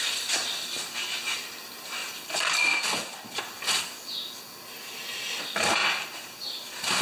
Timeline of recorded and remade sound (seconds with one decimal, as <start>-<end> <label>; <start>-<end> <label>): 0.0-7.0 recorded